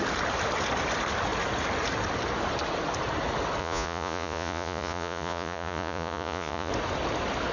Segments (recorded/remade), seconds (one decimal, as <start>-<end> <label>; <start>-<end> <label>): 0.0-3.6 recorded; 3.6-6.7 remade; 6.7-7.5 recorded